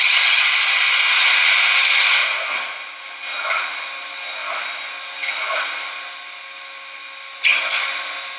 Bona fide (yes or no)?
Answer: yes